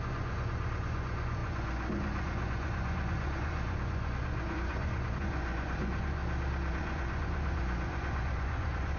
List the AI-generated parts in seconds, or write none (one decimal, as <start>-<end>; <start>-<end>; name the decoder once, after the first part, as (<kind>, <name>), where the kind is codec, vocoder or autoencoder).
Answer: 0.0-6.2 (vocoder, Vocos); 6.7-9.0